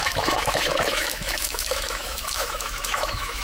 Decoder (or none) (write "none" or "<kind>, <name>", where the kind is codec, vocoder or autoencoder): autoencoder, DAC-VAE